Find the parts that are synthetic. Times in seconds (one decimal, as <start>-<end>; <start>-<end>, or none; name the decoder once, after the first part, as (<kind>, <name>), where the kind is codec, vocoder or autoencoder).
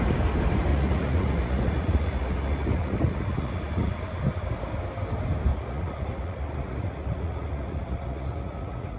0.7-4.2 (vocoder, Vocos); 5.5-9.0